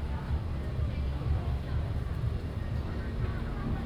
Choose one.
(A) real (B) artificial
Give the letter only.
A